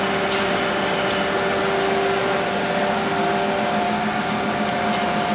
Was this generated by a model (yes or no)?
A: no